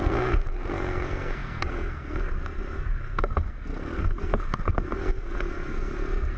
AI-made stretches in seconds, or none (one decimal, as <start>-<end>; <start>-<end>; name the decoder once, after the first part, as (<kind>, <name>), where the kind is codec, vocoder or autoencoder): 0.0-6.4 (codec, SNAC)